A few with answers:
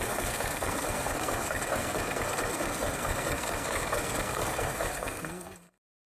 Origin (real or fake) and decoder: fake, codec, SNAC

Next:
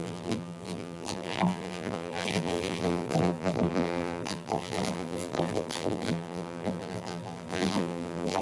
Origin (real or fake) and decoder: fake, vocoder, BigVGAN v2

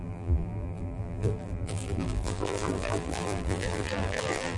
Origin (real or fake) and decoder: fake, vocoder, BigVGAN v2